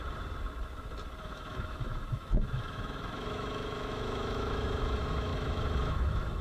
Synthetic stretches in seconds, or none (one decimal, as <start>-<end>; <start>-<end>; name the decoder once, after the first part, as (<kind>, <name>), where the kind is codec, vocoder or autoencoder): 1.2-6.4 (autoencoder, DAC-VAE)